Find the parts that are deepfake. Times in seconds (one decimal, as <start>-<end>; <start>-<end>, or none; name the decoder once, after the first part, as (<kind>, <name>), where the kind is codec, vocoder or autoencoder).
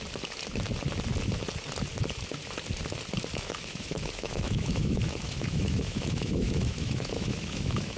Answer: 3.3-8.0 (autoencoder, DAC-VAE)